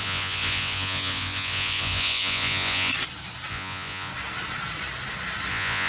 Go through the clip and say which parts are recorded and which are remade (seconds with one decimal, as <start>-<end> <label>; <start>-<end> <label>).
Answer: 0.0-2.9 remade; 2.9-3.5 recorded; 3.5-4.1 remade; 4.1-5.5 recorded; 5.5-5.9 remade